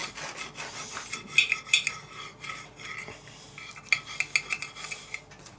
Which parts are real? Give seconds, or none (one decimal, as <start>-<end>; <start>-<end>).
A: 0.0-5.6